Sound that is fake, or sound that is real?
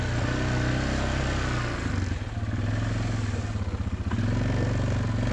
real